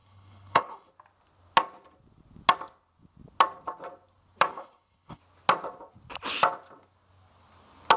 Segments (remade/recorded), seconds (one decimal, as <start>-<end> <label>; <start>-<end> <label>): 0.0-0.9 remade; 0.9-4.5 recorded; 4.5-5.2 remade; 5.2-8.0 recorded